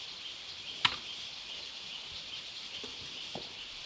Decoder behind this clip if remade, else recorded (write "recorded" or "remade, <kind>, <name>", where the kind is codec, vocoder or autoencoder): recorded